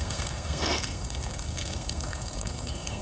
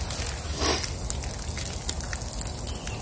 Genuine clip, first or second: second